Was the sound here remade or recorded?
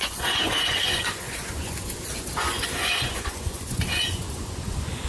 remade